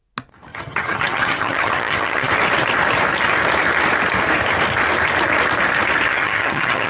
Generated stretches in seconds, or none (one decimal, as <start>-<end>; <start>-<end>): 0.5-2.3; 6.1-6.9